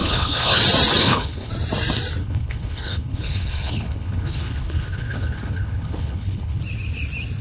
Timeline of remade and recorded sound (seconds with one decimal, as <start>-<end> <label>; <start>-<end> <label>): 0.0-0.6 remade; 0.6-1.0 recorded; 1.0-1.5 remade; 1.5-2.2 recorded; 2.2-6.6 remade; 6.6-7.4 recorded